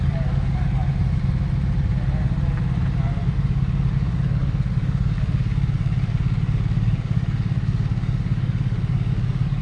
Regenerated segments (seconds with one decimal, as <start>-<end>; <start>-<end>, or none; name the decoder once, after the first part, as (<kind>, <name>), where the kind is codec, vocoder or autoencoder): 0.0-0.9 (codec, DAC); 3.3-9.6